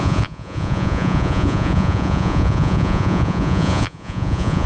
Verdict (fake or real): fake